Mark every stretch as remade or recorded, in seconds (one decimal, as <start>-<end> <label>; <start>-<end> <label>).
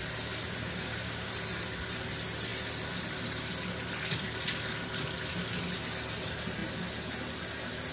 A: 0.0-0.6 recorded; 0.6-1.3 remade; 1.3-7.9 recorded